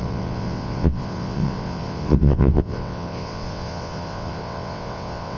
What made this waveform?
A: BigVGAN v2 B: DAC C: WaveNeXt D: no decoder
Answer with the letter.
C